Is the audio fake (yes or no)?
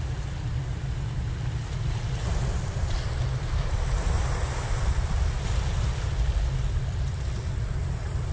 no